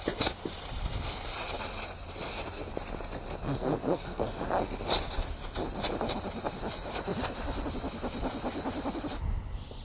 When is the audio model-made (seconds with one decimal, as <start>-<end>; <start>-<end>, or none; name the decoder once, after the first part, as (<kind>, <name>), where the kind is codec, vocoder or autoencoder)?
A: 3.4-4.4 (codec, SNAC)